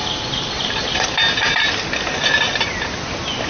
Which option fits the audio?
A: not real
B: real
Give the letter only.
B